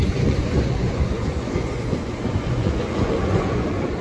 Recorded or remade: remade